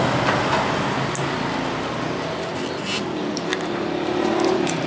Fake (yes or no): no